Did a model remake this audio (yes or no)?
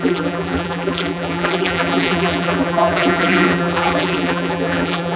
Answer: yes